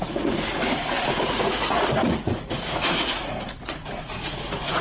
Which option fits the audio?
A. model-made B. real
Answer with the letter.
A